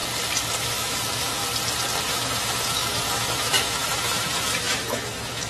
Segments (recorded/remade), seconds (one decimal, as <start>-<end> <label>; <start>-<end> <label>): 0.0-0.6 recorded; 0.6-1.4 remade; 1.4-2.1 recorded; 2.1-5.5 remade